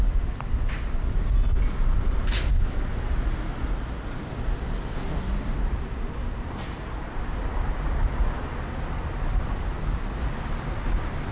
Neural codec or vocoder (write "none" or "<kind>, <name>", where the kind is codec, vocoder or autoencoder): none